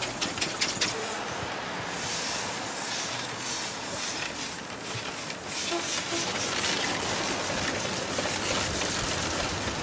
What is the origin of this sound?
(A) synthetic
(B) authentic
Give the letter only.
B